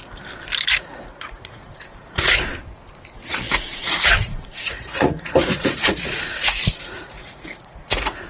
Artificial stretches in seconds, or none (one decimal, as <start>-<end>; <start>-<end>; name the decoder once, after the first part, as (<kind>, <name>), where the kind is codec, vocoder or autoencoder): 0.7-2.5 (vocoder, Vocos); 3.5-8.3